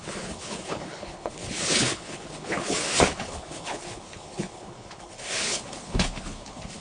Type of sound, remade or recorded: remade